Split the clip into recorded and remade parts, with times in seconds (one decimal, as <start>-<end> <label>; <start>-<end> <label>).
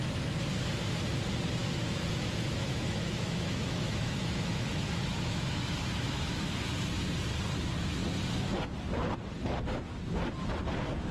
0.0-1.6 recorded; 1.6-6.6 remade; 6.6-11.1 recorded